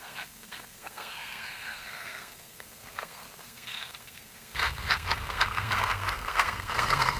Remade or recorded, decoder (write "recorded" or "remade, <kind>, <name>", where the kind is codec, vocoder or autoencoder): remade, codec, SNAC